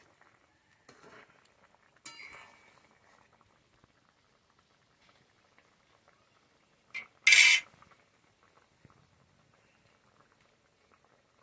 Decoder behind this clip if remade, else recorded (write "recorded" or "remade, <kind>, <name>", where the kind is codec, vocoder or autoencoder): recorded